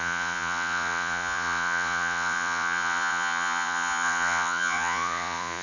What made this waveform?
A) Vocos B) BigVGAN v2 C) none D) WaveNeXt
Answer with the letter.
A